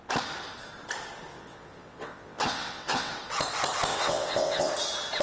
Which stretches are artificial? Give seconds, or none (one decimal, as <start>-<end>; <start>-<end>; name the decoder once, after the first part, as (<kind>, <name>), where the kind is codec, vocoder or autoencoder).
1.3-3.1 (vocoder, WaveNeXt); 3.9-4.7